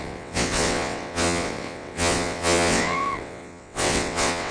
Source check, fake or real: fake